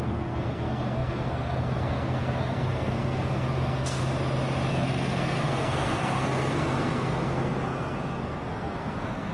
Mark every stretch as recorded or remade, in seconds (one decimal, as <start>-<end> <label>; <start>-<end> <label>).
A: 0.0-4.0 remade; 4.0-4.7 recorded; 4.7-9.3 remade